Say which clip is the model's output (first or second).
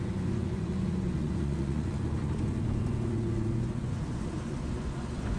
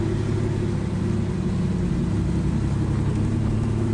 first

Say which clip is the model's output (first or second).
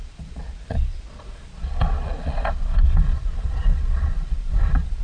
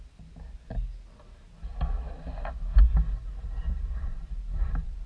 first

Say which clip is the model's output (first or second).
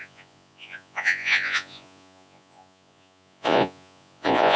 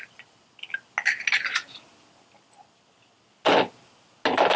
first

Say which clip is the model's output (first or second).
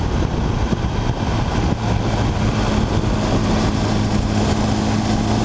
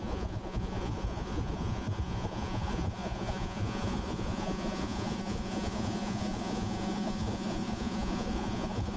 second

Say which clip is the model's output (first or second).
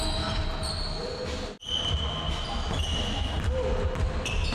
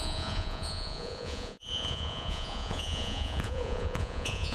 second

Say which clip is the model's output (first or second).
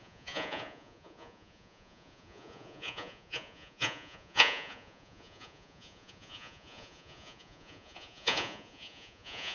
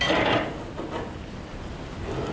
first